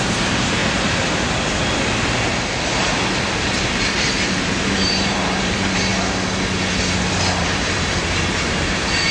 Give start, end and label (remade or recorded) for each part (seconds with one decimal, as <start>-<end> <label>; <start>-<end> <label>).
0.0-0.6 remade; 0.6-3.6 recorded; 3.6-5.9 remade; 5.9-7.4 recorded; 7.4-9.1 remade